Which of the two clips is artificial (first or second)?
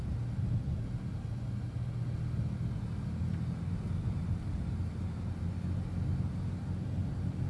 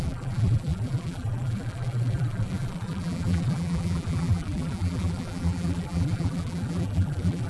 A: second